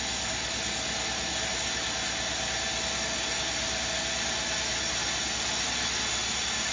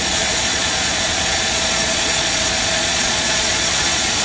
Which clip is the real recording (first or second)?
first